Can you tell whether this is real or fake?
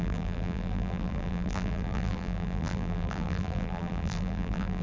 fake